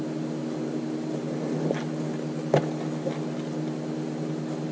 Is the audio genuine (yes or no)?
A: yes